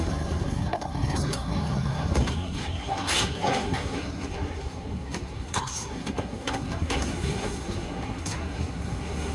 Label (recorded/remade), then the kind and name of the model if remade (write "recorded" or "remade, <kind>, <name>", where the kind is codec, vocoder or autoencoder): remade, codec, SNAC